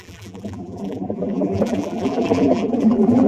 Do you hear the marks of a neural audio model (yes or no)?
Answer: yes